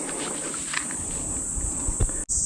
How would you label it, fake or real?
real